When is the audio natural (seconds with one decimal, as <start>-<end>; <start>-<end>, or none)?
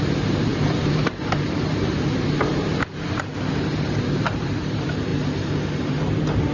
5.1-5.9